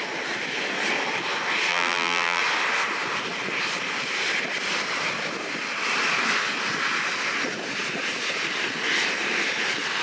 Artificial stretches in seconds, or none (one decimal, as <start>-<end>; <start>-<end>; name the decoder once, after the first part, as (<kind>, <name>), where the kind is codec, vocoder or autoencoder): 1.7-2.4 (vocoder, BigVGAN v2)